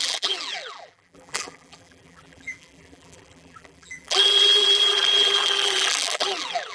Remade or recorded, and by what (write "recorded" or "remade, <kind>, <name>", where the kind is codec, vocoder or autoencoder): remade, vocoder, BigVGAN v2